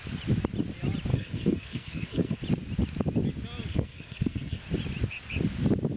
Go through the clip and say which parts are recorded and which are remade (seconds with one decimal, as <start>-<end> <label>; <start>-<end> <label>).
0.0-1.1 recorded; 1.1-2.4 remade; 2.4-3.7 recorded; 3.7-4.6 remade; 4.6-6.0 recorded